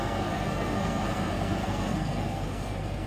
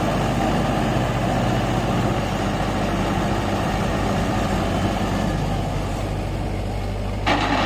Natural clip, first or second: second